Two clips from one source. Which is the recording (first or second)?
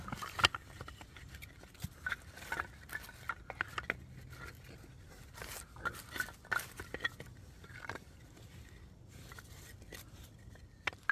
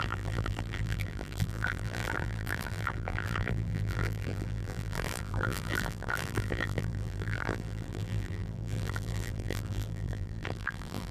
first